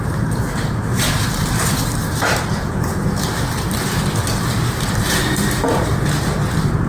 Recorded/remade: remade